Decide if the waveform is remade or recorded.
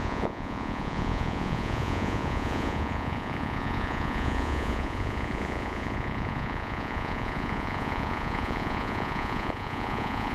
remade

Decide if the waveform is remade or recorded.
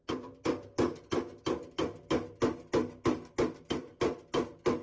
recorded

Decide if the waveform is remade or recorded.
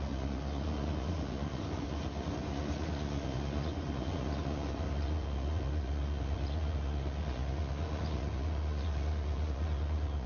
remade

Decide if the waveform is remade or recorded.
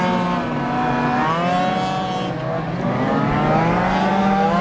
recorded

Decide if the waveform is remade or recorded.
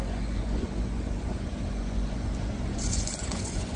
remade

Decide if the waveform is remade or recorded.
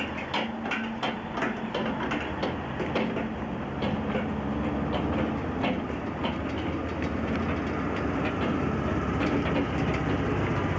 recorded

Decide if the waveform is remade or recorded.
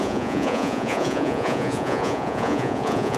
remade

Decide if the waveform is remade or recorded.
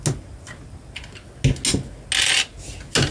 recorded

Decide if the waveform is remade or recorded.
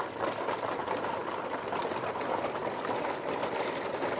recorded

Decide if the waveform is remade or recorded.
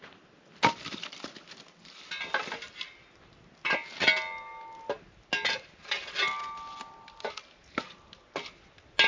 recorded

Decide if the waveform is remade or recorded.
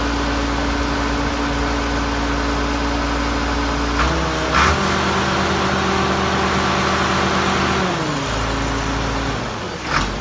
recorded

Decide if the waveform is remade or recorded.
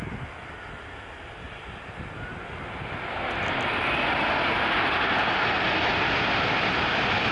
recorded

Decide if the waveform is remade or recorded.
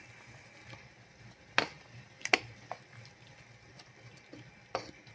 recorded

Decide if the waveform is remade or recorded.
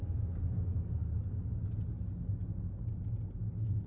recorded